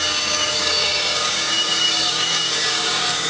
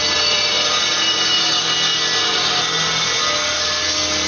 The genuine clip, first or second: second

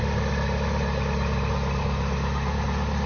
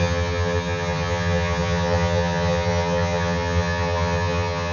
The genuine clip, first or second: first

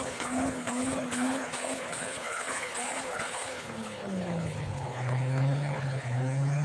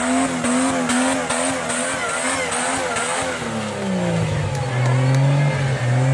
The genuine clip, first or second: second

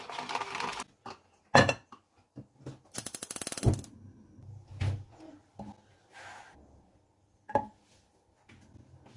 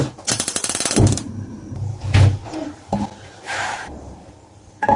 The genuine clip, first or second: first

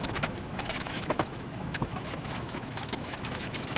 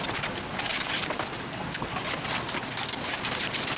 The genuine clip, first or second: second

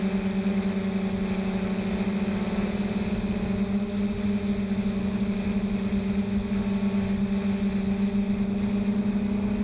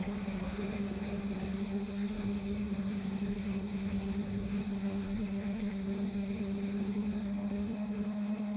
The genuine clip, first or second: first